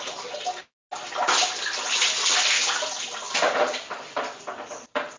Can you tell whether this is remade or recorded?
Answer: recorded